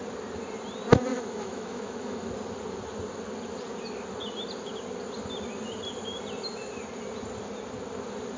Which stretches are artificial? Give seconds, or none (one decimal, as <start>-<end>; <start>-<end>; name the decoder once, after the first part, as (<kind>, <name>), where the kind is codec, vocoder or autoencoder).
1.1-2.3 (autoencoder, DAC-VAE)